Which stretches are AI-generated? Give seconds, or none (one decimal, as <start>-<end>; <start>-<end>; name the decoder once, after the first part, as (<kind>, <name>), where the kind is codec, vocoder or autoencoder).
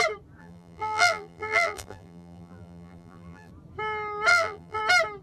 0.4-3.5 (vocoder, BigVGAN v2); 4.3-4.8